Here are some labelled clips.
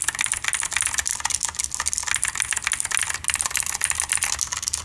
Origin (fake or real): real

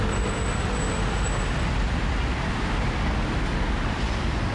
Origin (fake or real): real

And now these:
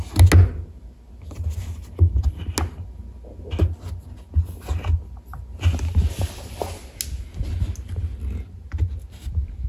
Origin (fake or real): real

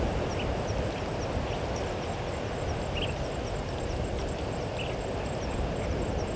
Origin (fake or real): real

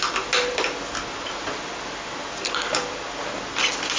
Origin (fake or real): real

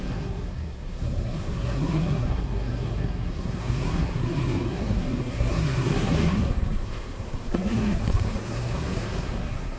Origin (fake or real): fake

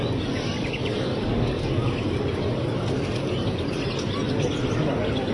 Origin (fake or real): real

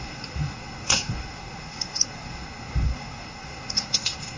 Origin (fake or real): fake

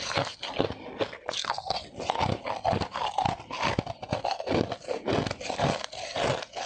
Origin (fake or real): real